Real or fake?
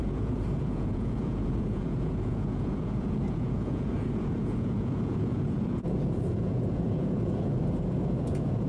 fake